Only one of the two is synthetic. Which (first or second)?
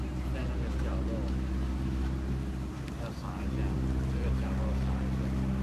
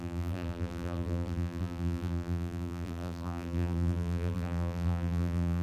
second